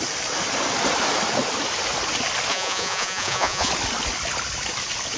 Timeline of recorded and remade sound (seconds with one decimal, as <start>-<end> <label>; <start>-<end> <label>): 0.0-2.5 recorded; 2.5-3.7 remade; 3.7-5.2 recorded